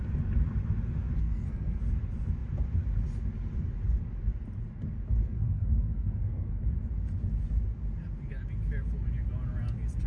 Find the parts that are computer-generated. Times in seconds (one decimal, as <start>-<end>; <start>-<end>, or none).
1.2-1.8; 5.2-6.6